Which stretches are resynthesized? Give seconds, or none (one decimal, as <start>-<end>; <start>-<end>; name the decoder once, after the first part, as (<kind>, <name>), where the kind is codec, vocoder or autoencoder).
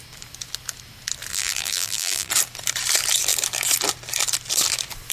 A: 1.3-2.3 (vocoder, BigVGAN v2)